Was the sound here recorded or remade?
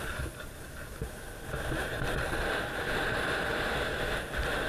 recorded